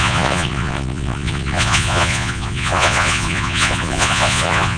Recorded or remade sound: remade